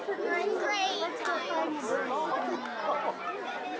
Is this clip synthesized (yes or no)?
no